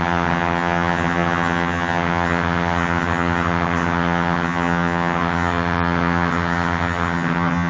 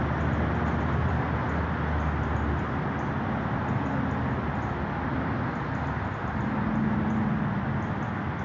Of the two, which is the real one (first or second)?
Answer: second